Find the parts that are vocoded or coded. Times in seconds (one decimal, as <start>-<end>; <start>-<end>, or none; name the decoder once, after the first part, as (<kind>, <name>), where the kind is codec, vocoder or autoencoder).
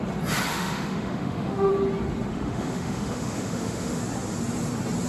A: 0.5-1.7 (autoencoder, DAC-VAE); 2.3-4.0